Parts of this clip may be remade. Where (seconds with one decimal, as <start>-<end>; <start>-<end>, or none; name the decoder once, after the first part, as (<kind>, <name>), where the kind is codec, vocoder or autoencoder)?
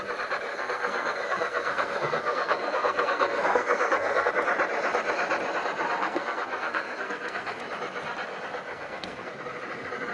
0.5-4.3 (codec, SNAC); 6.0-7.6; 8.7-9.3